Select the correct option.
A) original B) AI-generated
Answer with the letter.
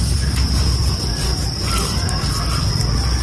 A